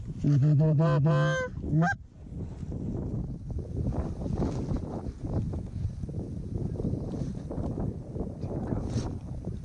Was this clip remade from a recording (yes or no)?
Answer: no